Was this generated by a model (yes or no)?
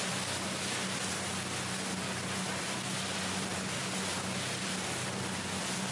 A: no